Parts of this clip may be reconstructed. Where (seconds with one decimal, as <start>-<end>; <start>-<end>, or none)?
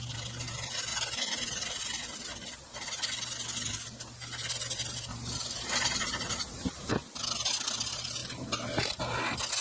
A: 0.9-1.8; 5.1-6.9; 8.2-9.0